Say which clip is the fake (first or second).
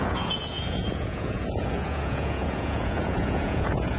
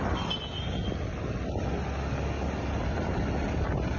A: first